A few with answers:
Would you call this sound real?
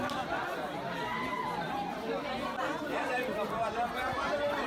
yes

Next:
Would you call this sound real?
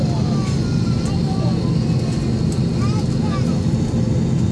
yes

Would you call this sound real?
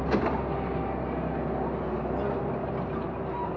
yes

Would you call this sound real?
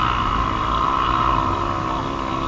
yes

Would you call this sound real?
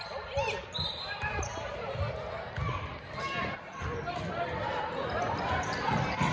no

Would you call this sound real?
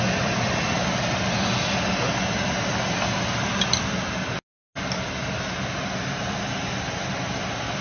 yes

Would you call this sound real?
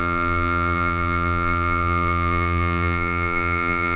no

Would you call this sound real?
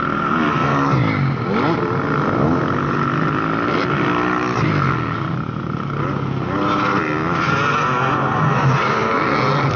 yes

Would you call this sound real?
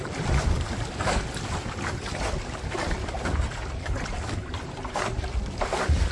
no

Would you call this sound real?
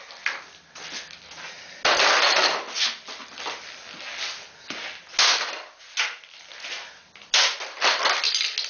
yes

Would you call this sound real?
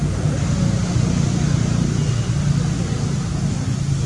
yes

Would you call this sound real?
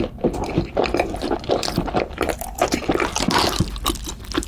no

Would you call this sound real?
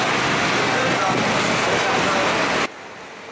yes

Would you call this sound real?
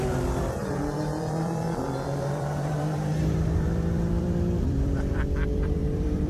no